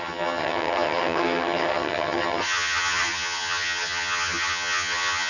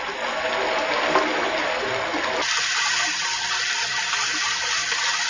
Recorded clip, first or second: second